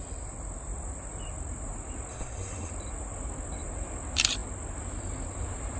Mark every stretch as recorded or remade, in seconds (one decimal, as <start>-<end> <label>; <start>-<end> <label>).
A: 0.0-2.1 recorded; 2.1-2.7 remade; 2.7-5.8 recorded